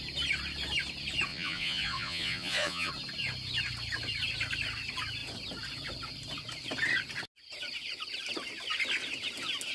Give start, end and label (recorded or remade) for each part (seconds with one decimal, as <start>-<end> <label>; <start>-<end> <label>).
0.0-1.3 recorded; 1.3-2.9 remade; 2.9-9.7 recorded